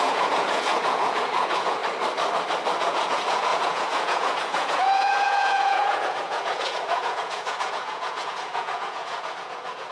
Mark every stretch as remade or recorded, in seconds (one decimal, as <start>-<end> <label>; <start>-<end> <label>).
0.0-1.8 remade; 1.8-2.8 recorded; 2.8-9.9 remade